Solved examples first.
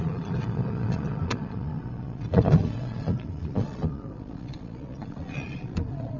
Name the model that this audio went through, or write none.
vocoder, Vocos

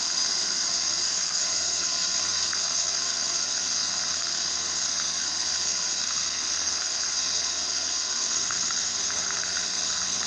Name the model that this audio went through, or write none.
codec, SNAC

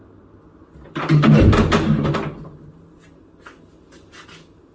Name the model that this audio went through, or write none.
none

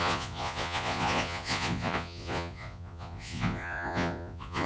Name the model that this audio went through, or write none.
vocoder, Vocos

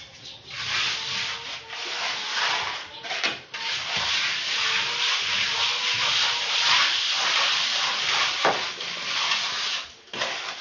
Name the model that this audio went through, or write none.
none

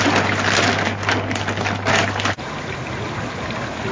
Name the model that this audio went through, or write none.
none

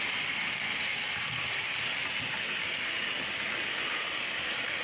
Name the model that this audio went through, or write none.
none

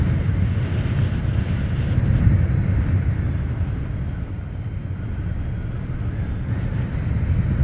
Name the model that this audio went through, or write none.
none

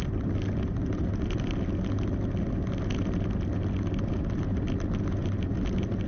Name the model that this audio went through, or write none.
none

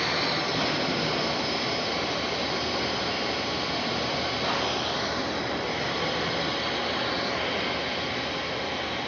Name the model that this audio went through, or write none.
none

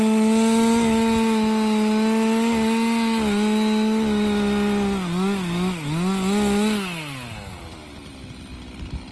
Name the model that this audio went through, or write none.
none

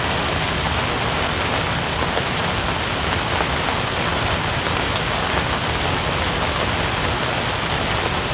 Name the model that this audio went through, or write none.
none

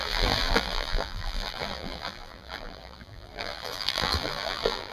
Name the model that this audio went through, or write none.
vocoder, BigVGAN v2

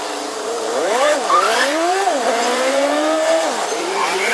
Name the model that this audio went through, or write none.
vocoder, BigVGAN v2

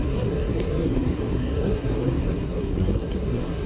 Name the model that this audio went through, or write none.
codec, SNAC